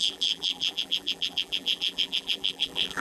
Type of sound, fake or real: fake